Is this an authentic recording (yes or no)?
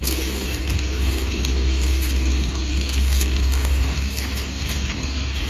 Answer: no